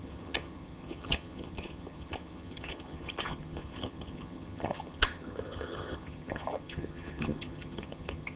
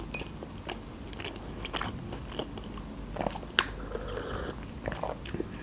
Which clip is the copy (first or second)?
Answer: first